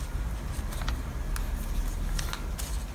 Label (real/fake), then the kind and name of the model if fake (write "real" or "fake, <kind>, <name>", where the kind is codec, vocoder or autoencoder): real